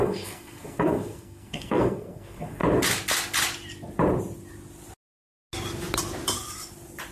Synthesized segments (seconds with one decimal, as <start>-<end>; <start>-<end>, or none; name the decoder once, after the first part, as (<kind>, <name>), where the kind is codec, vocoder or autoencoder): 0.0-2.6 (codec, SNAC)